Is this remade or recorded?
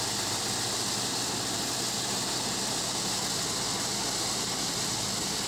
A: recorded